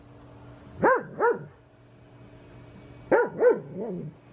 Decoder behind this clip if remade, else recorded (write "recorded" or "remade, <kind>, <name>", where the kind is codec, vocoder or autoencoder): recorded